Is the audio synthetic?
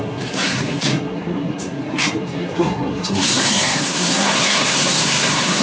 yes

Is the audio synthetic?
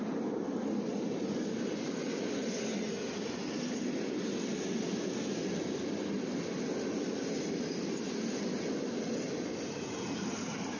no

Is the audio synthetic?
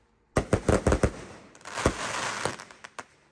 no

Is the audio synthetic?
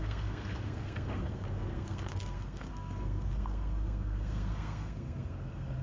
yes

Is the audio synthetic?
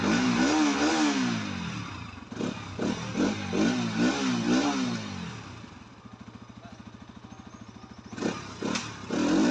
no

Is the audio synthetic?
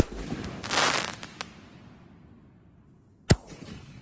no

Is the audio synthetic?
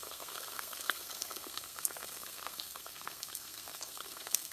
yes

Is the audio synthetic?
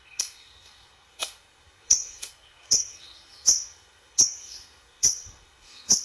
yes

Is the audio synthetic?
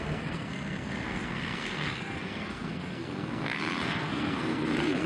yes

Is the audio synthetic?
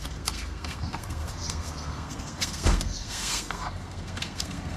yes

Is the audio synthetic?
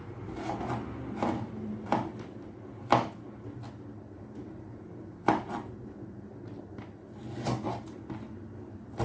no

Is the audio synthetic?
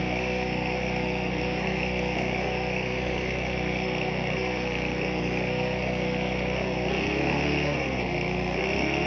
yes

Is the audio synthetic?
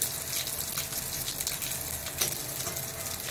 no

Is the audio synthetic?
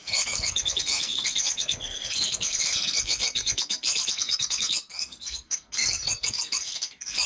yes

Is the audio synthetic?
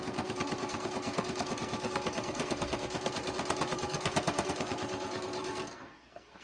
yes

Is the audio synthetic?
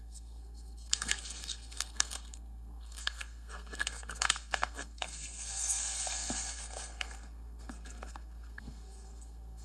yes